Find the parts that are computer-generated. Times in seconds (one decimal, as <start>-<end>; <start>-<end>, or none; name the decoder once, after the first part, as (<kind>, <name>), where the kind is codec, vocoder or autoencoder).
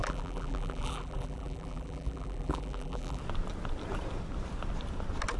0.0-3.2 (vocoder, BigVGAN v2)